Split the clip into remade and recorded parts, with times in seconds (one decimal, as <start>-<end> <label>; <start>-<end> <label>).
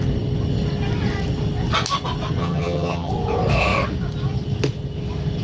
0.0-2.4 recorded; 2.4-3.1 remade; 3.1-5.4 recorded